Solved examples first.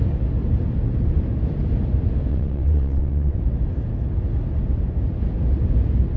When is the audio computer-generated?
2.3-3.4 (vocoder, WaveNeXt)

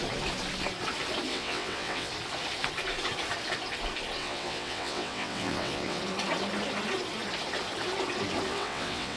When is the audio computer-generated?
1.3-2.1 (vocoder, WaveNeXt); 4.2-6.0; 8.5-9.2

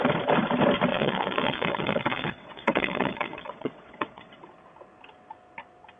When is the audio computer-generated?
0.9-4.5 (vocoder, WaveNeXt)

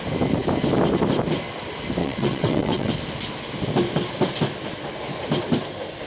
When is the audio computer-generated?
2.0-2.9 (vocoder, WaveNeXt)

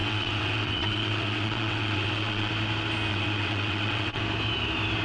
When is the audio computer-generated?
0.0-2.5 (vocoder, WaveNeXt); 3.1-4.2

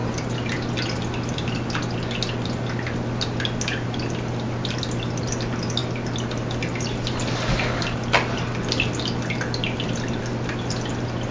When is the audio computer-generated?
none

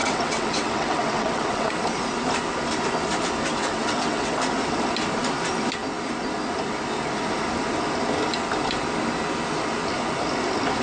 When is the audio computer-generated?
0.0-1.7 (vocoder, WaveNeXt); 3.6-4.3